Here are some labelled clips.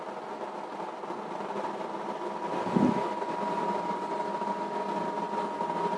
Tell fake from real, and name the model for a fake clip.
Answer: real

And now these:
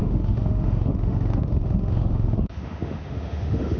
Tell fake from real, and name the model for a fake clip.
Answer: fake, autoencoder, DAC-VAE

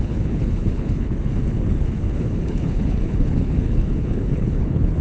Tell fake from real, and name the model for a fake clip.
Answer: fake, codec, HILCodec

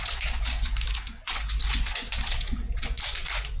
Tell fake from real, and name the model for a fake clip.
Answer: fake, vocoder, Vocos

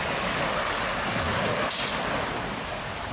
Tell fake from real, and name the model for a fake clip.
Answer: real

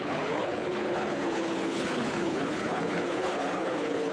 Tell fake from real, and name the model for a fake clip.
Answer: fake, codec, HILCodec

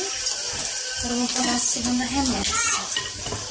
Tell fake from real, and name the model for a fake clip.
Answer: real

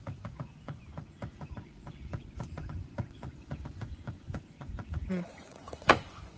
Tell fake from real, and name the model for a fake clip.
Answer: fake, vocoder, Vocos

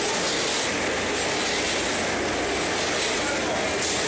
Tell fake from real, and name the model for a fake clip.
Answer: real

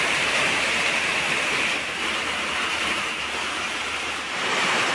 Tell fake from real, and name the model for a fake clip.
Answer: fake, vocoder, BigVGAN v2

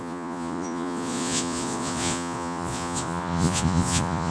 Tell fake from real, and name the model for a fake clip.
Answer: fake, vocoder, Vocos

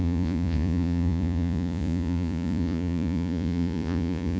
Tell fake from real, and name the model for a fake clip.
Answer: fake, vocoder, Vocos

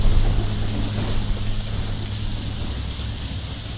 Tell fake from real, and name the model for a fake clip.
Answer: real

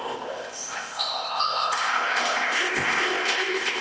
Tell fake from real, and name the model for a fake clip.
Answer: fake, codec, ZipCodec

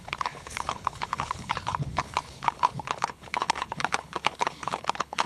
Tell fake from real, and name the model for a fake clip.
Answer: fake, codec, HILCodec